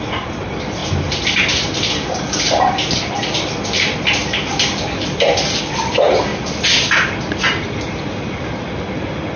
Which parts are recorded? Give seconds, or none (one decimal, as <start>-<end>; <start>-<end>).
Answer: 0.0-9.4